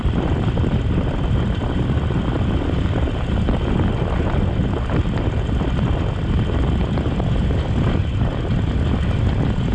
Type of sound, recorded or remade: remade